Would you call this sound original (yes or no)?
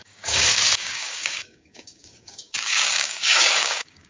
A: no